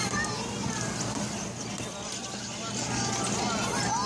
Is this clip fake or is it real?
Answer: real